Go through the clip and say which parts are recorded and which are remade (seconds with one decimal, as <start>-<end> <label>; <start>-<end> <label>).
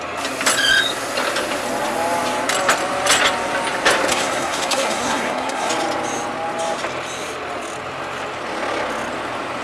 0.0-4.1 recorded; 4.1-5.7 remade; 5.7-9.6 recorded